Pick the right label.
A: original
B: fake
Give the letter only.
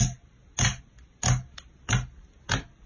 A